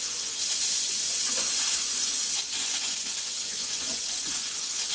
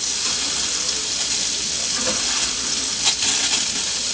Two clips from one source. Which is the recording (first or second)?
second